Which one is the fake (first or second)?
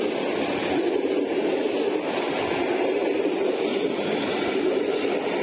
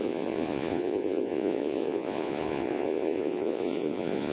second